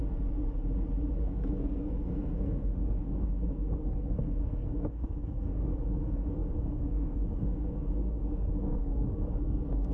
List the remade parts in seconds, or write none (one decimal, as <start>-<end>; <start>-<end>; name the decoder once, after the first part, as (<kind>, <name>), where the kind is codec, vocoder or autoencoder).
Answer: 1.2-9.9 (codec, SNAC)